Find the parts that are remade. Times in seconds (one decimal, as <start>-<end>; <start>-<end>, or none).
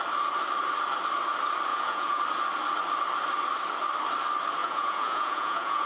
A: 1.7-2.2; 4.6-5.9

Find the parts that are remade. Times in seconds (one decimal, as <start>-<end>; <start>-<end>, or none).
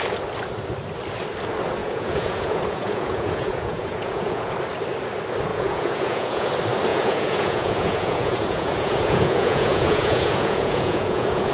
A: 1.8-4.5; 5.5-6.5; 6.9-11.5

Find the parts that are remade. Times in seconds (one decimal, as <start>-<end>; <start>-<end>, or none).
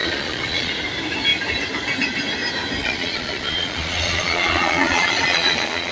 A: 0.0-0.7; 2.8-5.9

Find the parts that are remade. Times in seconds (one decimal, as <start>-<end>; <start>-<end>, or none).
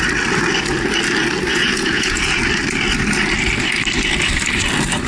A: 1.5-2.4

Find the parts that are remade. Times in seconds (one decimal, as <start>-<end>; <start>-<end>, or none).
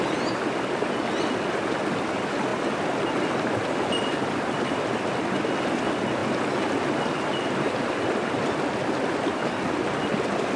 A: none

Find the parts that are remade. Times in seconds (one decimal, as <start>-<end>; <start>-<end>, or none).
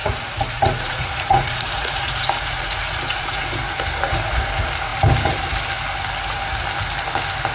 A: 0.0-3.6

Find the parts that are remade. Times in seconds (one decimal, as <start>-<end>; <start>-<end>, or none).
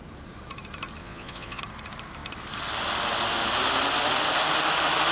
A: 1.0-1.6